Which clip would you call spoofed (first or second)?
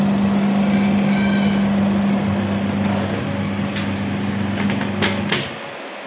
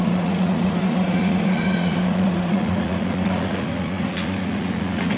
second